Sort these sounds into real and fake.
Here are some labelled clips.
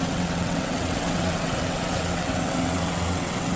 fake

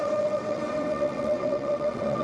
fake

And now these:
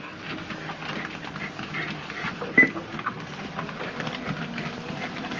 real